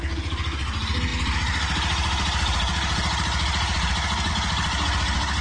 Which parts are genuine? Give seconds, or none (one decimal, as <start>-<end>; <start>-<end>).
0.0-5.4